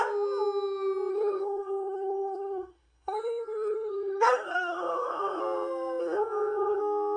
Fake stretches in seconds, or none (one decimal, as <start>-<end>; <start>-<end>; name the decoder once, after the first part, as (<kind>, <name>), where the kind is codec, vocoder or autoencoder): 1.1-5.4 (codec, SNAC); 6.0-6.8